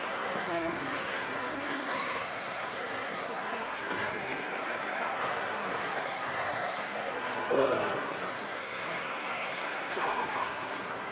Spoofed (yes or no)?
yes